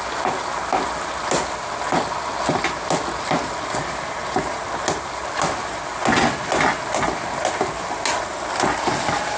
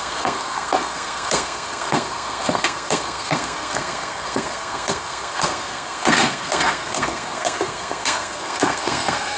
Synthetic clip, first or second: second